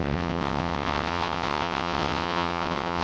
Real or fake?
fake